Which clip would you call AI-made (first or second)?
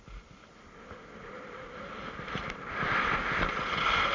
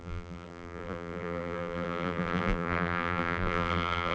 second